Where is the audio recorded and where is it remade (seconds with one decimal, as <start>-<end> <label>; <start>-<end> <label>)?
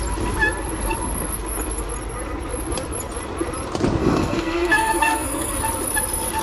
0.0-4.0 recorded; 4.0-5.6 remade; 5.6-6.4 recorded